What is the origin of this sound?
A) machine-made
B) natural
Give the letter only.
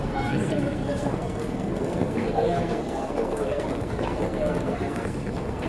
A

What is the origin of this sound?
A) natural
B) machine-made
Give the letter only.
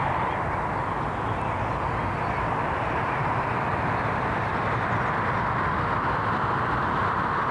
A